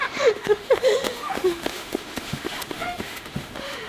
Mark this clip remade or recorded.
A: remade